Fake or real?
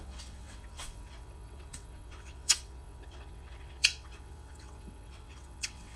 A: fake